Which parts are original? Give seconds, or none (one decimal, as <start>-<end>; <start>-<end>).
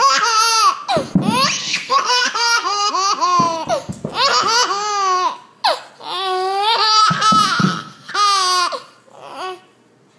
0.0-1.6; 2.9-7.6; 8.1-10.2